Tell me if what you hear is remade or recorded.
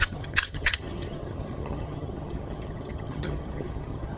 remade